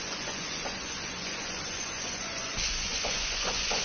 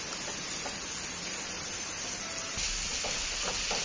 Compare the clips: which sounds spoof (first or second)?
first